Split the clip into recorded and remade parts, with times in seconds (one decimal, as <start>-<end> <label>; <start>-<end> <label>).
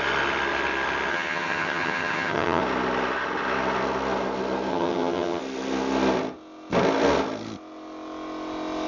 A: 0.0-1.1 recorded; 1.1-2.6 remade; 2.6-4.7 recorded; 4.7-5.4 remade; 5.4-8.9 recorded